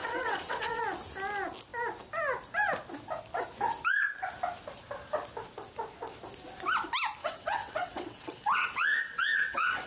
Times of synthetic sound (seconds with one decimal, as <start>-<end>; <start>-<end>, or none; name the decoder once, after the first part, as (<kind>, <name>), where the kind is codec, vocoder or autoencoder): 0.0-0.8 (vocoder, WaveNeXt); 7.2-9.9